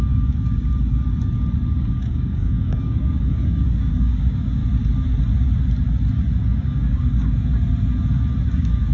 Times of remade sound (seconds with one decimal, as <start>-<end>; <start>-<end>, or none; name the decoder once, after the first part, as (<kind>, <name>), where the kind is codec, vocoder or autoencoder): 0.0-0.6 (codec, DAC); 1.8-4.6; 6.4-7.5; 8.5-8.9

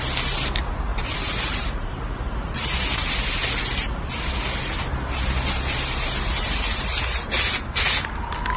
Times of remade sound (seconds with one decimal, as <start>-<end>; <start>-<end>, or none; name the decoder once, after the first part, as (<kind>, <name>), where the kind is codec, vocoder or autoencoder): 0.9-2.3 (vocoder, BigVGAN v2)

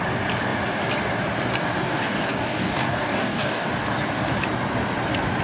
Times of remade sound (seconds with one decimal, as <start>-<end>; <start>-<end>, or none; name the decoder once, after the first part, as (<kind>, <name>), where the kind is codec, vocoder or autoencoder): 1.9-3.7 (codec, DAC)

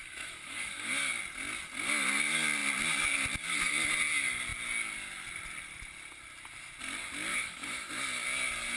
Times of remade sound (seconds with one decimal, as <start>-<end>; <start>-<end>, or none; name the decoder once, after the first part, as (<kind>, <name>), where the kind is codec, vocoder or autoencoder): 0.0-0.9 (autoencoder, DAC-VAE); 7.3-7.9

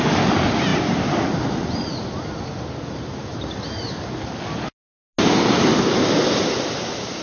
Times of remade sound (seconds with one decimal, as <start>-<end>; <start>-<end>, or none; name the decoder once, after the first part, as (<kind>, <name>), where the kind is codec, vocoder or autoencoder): none